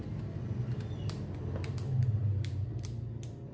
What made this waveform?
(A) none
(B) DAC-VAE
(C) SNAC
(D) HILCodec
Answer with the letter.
A